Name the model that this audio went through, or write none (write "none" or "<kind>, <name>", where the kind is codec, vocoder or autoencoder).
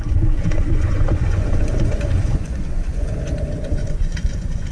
vocoder, Vocos